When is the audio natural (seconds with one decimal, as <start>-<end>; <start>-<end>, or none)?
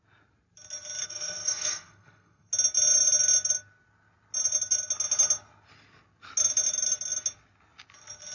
0.0-1.0; 2.5-8.3